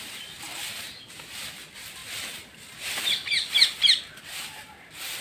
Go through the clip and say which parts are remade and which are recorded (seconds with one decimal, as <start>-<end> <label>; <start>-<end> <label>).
0.0-5.2 recorded